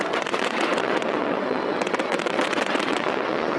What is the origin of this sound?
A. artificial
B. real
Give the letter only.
A